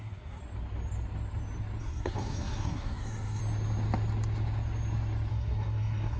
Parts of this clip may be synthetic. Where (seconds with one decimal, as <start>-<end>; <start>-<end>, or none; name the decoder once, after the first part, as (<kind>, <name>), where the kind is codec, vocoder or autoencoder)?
0.0-0.4 (codec, SNAC); 1.8-3.4; 5.3-6.2

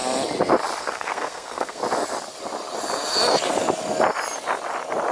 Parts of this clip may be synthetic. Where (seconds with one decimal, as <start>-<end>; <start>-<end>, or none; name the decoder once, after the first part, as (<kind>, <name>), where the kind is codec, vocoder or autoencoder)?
0.8-1.8 (codec, SNAC)

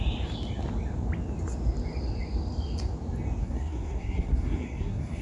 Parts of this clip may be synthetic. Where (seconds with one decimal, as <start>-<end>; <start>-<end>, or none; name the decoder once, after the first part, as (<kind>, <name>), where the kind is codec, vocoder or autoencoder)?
3.4-5.2 (codec, SNAC)

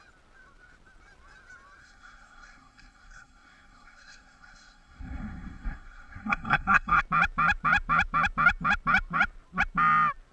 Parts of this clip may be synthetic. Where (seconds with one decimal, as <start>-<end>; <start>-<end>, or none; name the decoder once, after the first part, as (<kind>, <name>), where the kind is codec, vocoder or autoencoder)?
1.8-7.0 (codec, SNAC)

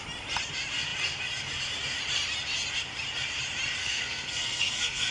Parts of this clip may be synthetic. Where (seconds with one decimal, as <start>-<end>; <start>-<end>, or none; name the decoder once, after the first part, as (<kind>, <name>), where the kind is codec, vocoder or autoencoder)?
3.8-5.1 (codec, SNAC)

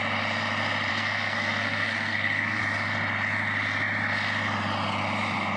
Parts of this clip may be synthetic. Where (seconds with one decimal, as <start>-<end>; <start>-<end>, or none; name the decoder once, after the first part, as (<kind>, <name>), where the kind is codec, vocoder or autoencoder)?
0.9-2.6 (codec, SNAC)

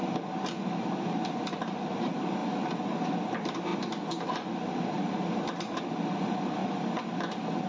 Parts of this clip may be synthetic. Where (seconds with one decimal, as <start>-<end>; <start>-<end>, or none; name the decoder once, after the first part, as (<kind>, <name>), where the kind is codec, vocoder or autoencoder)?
none

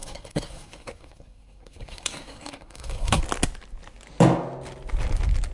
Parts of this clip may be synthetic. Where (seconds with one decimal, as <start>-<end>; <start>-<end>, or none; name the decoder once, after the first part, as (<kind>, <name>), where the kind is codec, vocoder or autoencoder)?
0.0-3.2 (codec, SNAC)